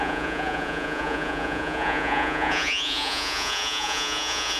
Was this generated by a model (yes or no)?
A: yes